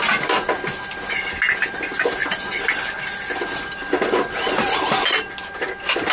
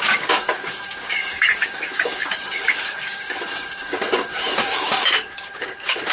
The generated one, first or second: second